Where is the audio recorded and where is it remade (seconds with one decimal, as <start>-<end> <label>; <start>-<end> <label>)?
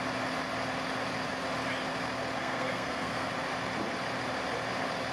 0.0-2.4 recorded; 2.4-3.3 remade; 3.3-5.1 recorded